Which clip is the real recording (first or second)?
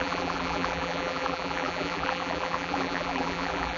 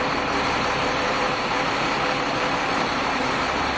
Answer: second